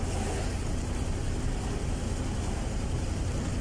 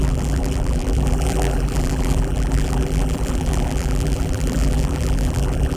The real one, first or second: first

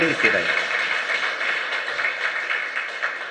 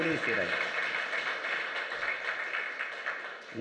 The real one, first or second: second